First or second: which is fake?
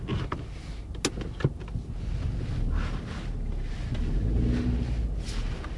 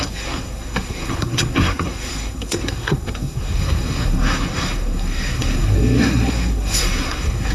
second